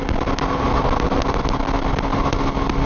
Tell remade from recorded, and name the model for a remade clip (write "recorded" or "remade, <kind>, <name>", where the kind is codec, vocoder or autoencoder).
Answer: recorded